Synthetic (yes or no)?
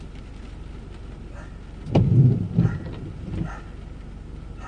no